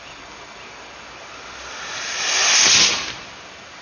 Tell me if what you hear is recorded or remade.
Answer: recorded